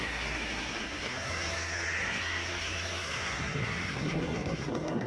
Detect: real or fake fake